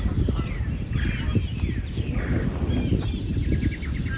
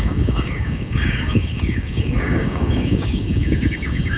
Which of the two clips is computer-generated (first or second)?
second